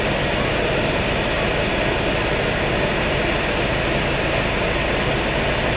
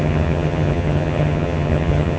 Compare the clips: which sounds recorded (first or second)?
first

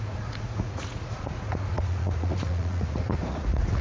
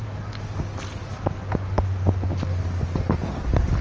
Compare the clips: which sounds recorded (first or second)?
second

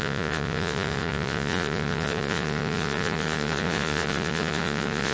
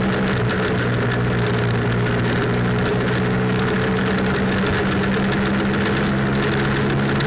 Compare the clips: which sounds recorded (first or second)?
second